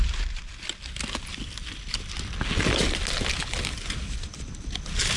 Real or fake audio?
real